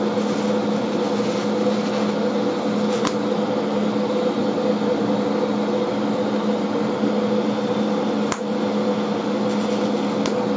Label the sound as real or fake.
real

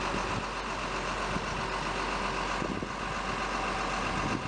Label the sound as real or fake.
real